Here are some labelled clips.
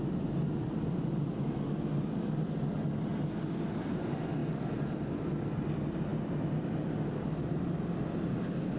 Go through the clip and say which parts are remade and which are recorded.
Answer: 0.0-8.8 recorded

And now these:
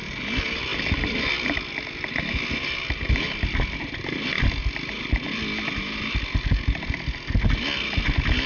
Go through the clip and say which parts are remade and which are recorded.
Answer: 0.0-8.5 recorded

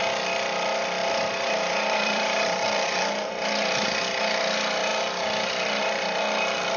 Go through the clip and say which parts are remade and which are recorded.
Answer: 0.0-1.0 recorded; 1.0-3.3 remade; 3.3-6.8 recorded

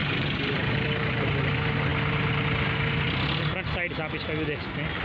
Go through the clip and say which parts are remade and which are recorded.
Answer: 0.0-1.4 remade; 1.4-5.0 recorded

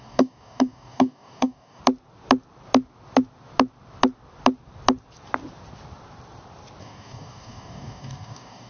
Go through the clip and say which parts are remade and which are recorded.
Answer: 0.0-1.8 remade; 1.8-6.8 recorded; 6.8-8.7 remade

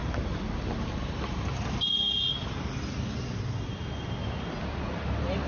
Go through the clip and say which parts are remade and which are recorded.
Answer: 0.0-5.5 recorded